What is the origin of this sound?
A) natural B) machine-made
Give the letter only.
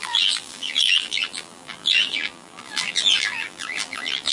B